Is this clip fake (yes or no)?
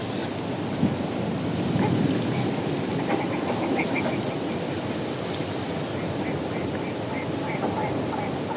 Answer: no